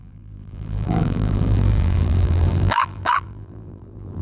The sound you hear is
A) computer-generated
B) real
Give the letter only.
A